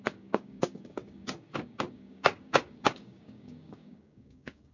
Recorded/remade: remade